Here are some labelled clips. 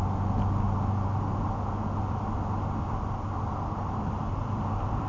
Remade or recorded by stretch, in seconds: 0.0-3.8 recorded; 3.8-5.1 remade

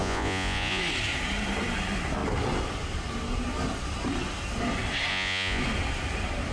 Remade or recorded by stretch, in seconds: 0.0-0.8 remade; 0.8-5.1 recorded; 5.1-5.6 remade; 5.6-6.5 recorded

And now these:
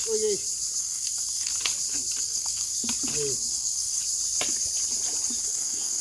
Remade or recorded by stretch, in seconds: 0.0-0.8 recorded; 0.8-1.5 remade; 1.5-2.2 recorded; 2.2-2.7 remade; 2.7-3.5 recorded; 3.5-4.0 remade; 4.0-5.4 recorded; 5.4-6.0 remade

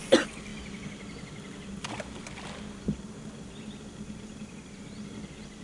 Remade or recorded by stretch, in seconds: 0.0-5.6 recorded

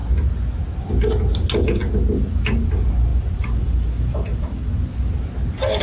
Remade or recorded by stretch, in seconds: 0.0-3.1 recorded; 3.1-4.7 remade; 4.7-5.8 recorded

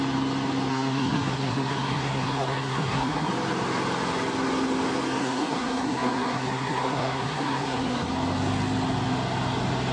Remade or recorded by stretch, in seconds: 0.0-0.7 recorded; 0.7-3.3 remade; 3.3-5.2 recorded; 5.2-8.1 remade; 8.1-9.9 recorded